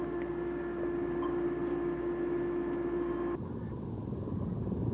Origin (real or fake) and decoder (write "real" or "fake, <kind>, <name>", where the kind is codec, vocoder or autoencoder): real